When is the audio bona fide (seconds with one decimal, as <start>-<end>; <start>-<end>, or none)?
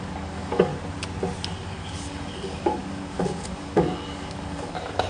0.7-1.7